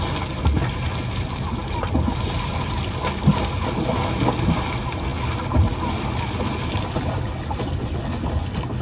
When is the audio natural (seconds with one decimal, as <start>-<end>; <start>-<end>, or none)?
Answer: 0.0-8.8